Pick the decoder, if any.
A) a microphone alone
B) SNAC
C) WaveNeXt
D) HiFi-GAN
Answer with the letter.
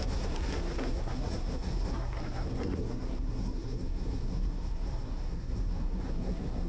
B